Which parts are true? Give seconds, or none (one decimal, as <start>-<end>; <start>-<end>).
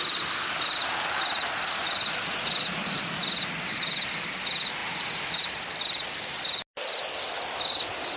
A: 0.0-4.8; 5.4-8.2